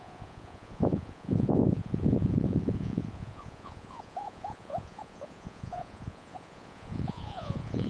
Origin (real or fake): fake